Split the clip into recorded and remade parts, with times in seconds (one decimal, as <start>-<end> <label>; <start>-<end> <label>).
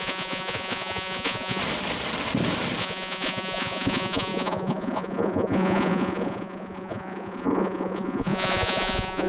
0.0-1.6 remade; 1.6-2.8 recorded; 2.8-9.3 remade